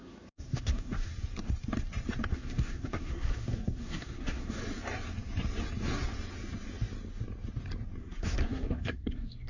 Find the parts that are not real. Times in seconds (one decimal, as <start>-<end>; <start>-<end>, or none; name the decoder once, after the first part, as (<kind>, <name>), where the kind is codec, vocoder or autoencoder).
0.0-1.1 (codec, SNAC); 2.3-4.6; 8.0-9.5